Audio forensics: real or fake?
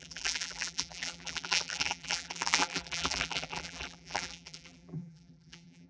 fake